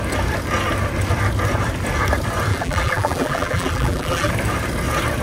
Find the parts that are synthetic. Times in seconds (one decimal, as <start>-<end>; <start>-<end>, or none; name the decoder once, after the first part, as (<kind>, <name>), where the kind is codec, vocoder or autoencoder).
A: 2.5-4.3 (vocoder, BigVGAN v2)